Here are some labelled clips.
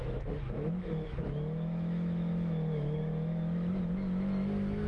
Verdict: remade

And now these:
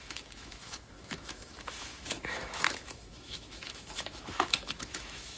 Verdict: remade